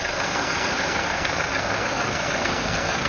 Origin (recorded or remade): remade